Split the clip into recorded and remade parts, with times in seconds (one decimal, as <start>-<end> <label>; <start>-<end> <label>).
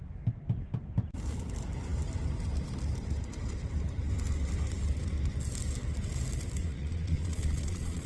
0.0-6.6 recorded; 6.6-8.1 remade